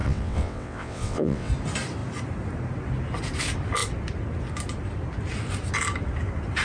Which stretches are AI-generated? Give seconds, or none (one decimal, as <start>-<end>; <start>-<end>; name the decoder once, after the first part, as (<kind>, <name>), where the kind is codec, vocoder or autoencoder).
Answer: 0.0-1.5 (vocoder, WaveNeXt)